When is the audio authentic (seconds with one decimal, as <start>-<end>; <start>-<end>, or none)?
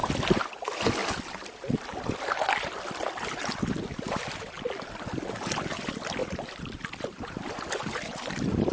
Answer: 0.0-8.7